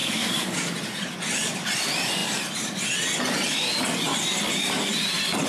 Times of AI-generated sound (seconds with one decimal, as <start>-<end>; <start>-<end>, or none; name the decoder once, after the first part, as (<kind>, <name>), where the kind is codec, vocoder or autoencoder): 0.0-0.7 (codec, DAC)